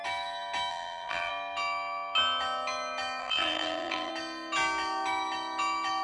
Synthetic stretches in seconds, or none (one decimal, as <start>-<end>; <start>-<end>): 0.7-1.3; 3.2-4.1